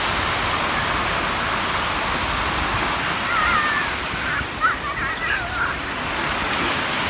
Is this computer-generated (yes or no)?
no